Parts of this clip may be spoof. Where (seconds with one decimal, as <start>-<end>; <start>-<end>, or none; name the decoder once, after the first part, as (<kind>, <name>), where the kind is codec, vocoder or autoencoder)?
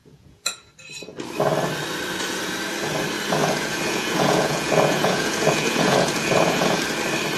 0.0-0.7 (vocoder, Vocos); 3.4-6.8